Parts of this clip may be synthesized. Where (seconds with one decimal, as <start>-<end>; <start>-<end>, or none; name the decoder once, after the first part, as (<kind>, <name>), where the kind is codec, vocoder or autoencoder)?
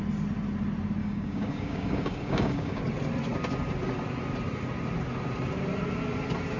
1.0-2.8 (codec, DAC)